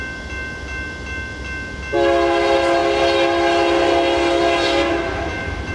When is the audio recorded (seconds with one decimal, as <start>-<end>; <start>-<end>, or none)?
0.0-5.7